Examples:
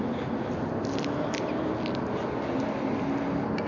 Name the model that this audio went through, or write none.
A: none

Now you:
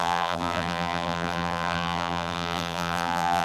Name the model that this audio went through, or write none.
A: vocoder, BigVGAN v2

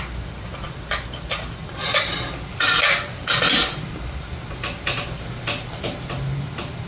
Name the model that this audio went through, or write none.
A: none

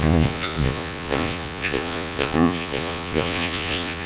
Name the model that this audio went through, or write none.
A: vocoder, Vocos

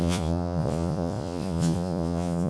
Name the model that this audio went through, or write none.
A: vocoder, Vocos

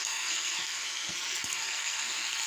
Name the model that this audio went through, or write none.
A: codec, SNAC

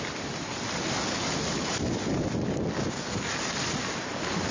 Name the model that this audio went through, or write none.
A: none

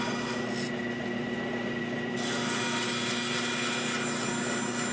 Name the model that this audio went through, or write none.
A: none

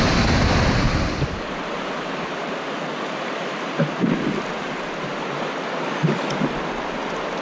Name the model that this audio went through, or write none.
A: none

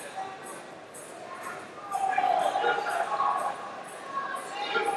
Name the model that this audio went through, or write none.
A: none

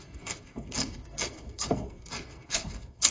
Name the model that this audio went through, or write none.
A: codec, SNAC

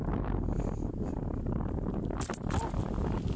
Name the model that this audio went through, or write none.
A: none